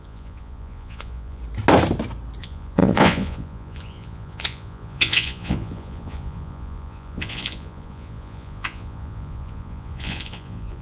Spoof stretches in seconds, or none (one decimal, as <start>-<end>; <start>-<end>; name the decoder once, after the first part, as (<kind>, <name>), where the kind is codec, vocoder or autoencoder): 0.0-1.4 (vocoder, Vocos); 2.4-10.8